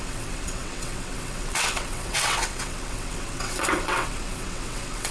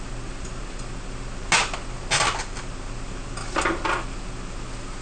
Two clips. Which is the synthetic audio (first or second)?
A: first